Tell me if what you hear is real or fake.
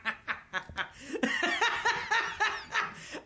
real